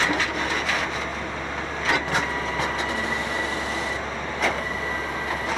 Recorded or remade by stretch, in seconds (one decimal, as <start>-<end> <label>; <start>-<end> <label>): 0.0-5.6 recorded